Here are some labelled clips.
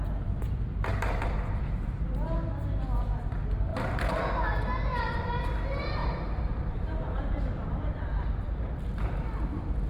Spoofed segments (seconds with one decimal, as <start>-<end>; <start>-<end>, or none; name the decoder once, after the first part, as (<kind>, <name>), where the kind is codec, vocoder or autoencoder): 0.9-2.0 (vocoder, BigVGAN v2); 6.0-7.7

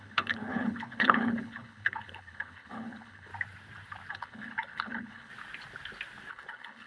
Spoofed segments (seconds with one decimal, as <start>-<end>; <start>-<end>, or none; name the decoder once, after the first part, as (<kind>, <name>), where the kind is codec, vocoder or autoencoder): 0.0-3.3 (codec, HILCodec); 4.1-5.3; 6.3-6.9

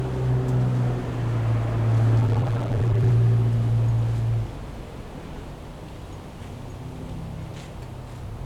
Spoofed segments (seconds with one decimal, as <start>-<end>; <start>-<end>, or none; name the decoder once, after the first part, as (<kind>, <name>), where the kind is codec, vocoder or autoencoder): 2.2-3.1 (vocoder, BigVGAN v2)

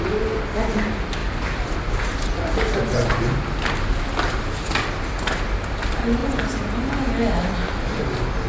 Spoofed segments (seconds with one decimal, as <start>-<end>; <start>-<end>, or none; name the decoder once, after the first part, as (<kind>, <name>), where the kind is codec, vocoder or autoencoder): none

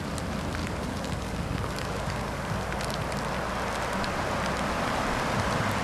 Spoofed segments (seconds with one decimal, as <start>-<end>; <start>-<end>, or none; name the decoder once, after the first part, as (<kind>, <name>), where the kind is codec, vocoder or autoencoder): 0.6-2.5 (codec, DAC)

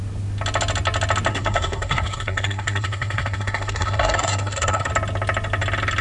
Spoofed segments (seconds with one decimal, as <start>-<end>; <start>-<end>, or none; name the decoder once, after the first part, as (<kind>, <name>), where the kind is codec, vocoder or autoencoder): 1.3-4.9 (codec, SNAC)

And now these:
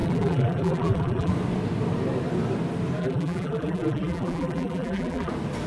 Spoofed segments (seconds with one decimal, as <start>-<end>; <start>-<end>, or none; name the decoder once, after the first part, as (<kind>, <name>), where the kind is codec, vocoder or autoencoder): 0.0-1.3 (vocoder, BigVGAN v2); 3.0-5.3